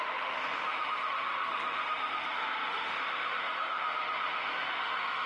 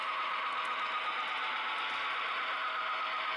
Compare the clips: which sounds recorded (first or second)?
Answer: second